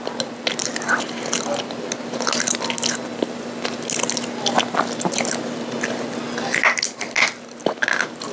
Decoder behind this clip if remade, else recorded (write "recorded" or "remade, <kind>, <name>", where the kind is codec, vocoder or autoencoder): recorded